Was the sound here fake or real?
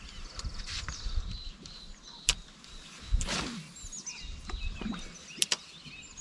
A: real